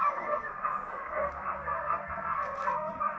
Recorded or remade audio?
remade